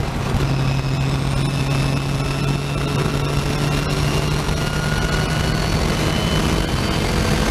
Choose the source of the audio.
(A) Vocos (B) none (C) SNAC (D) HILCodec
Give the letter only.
B